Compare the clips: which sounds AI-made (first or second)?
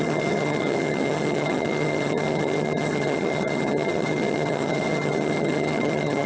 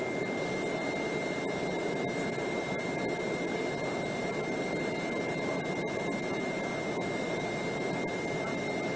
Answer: first